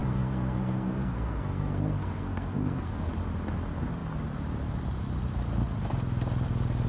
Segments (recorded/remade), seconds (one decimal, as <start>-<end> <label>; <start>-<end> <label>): 0.0-3.1 remade; 3.1-6.9 recorded